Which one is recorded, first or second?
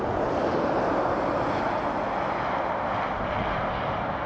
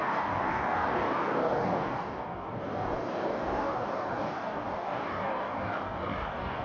first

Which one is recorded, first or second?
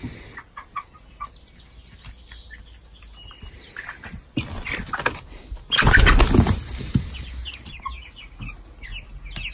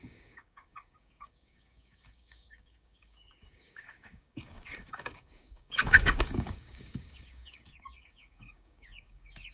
first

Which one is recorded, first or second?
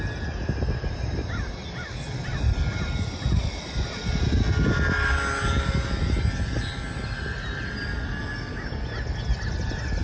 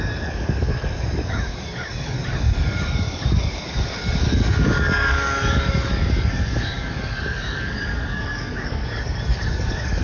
first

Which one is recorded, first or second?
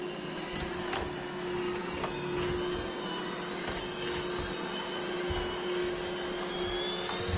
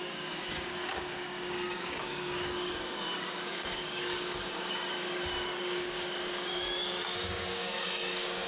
first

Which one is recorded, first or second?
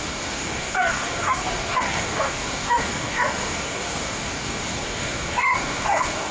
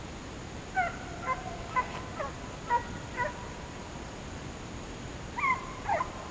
second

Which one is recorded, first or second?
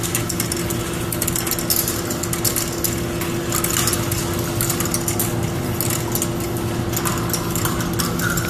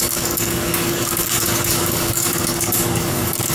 first